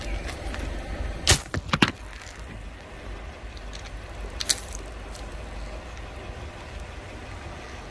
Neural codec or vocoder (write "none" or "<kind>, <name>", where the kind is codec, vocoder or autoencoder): none